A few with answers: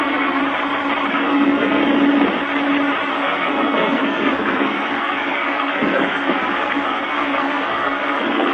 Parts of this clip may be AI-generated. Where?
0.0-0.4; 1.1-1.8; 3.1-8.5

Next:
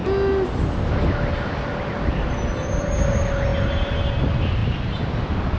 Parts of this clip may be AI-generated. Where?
none